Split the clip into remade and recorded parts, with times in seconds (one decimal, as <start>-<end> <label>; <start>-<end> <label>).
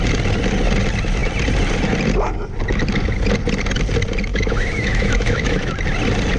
0.0-4.3 recorded; 4.3-5.7 remade; 5.7-6.4 recorded